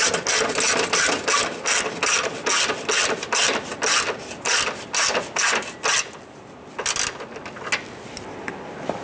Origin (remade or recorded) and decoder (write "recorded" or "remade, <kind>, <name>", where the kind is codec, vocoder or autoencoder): recorded